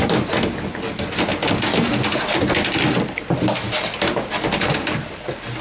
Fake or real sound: real